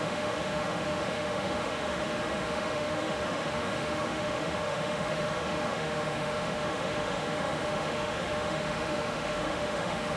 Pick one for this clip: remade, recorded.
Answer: remade